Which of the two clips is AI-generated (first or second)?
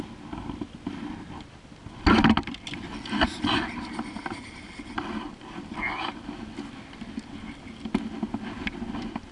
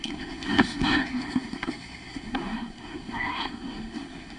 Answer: second